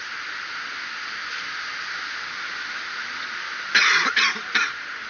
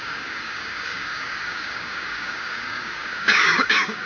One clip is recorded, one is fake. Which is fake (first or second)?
second